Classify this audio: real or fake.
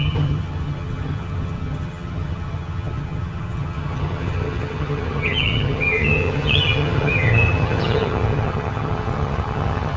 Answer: fake